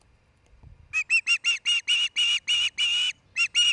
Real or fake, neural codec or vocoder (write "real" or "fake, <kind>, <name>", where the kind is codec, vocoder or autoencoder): real